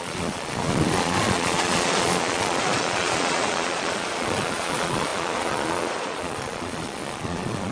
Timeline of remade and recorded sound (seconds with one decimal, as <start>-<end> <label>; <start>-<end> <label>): 0.0-7.7 remade

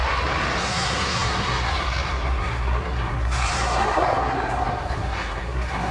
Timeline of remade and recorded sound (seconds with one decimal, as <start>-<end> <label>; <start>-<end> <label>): 0.0-0.6 recorded; 0.6-5.9 remade

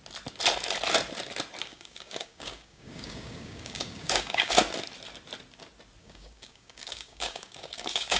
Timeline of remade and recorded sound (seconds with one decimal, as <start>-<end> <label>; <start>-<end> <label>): 0.0-1.7 recorded; 1.7-4.5 remade; 4.5-6.0 recorded; 6.0-8.2 remade

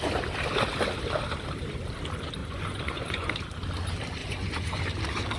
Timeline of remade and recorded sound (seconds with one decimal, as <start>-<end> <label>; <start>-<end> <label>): 0.0-2.4 recorded; 2.4-3.3 remade; 3.3-4.2 recorded; 4.2-4.8 remade; 4.8-5.4 recorded

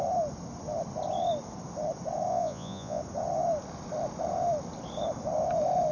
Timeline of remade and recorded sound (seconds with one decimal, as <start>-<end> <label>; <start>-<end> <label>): 0.0-2.3 recorded; 2.3-3.0 remade; 3.0-5.9 recorded